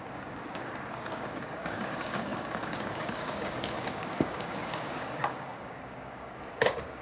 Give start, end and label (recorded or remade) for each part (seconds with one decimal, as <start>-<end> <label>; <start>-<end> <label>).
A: 0.0-7.0 remade